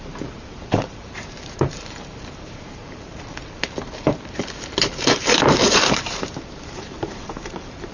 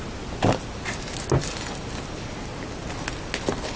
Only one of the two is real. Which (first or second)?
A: second